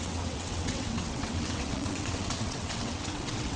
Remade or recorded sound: remade